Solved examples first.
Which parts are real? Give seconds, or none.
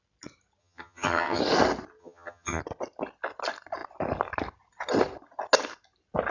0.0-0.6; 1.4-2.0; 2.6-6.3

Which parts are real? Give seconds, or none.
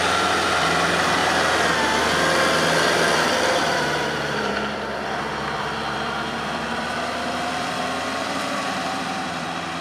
1.2-3.6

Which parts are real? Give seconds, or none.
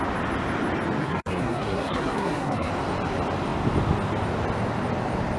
0.0-1.0; 2.7-5.4